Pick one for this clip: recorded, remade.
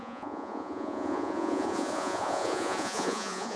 remade